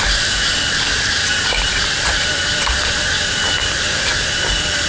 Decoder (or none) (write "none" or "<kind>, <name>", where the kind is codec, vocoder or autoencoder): none